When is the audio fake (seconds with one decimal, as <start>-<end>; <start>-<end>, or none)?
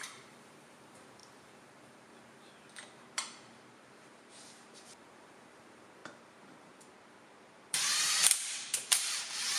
0.0-9.6